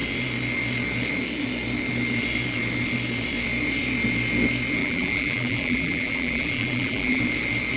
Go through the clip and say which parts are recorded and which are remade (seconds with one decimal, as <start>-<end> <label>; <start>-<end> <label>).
0.0-4.8 recorded; 4.8-7.2 remade; 7.2-7.8 recorded